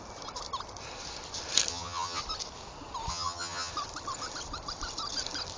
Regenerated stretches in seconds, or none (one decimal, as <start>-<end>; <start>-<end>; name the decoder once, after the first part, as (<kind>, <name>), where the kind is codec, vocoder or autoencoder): 1.7-2.2 (vocoder, HiFi-GAN); 3.1-3.7